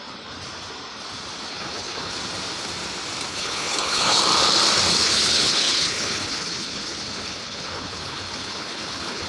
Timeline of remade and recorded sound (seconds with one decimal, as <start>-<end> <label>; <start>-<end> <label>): 0.0-1.5 recorded; 1.5-2.1 remade; 2.1-3.3 recorded; 3.3-4.2 remade; 4.2-4.9 recorded; 4.9-9.3 remade